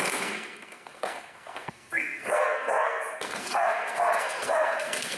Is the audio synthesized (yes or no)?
yes